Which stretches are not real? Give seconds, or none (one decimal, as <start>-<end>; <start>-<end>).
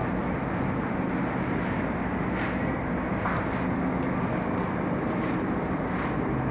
none